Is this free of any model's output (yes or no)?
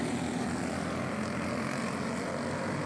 yes